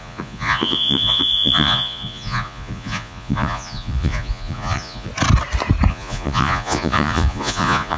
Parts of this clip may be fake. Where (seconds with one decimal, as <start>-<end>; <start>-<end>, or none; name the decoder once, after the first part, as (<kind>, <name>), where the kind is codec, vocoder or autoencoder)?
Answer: 0.0-5.1 (vocoder, Vocos); 5.9-8.0